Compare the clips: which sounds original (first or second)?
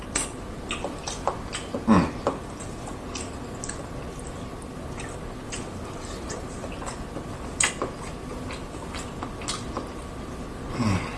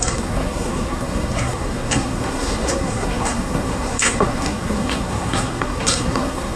first